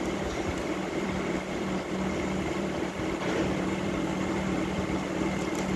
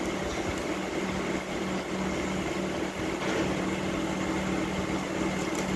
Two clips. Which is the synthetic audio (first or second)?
first